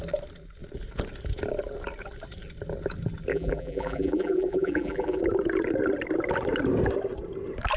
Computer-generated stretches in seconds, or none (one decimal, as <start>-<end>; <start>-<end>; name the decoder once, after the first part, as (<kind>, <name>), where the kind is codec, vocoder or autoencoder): 3.3-5.2 (vocoder, BigVGAN v2)